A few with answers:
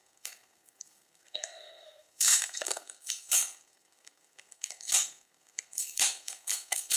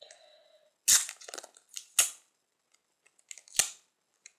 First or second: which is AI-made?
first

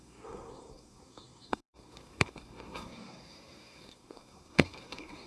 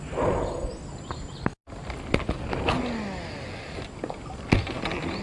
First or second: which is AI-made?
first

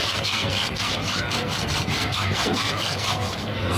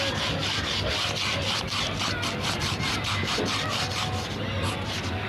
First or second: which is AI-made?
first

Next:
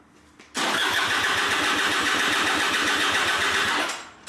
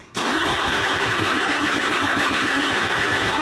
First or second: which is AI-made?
second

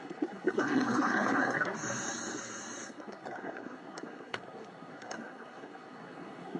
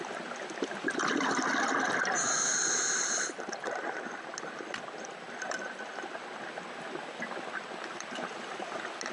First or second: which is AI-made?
first